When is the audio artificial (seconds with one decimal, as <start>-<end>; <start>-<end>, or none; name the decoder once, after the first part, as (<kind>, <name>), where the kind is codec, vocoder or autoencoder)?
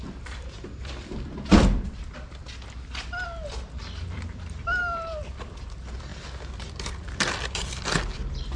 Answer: 0.0-2.4 (vocoder, BigVGAN v2); 3.2-6.1; 6.9-8.6